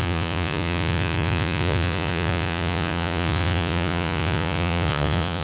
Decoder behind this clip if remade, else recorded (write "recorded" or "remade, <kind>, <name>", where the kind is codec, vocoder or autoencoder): remade, vocoder, Vocos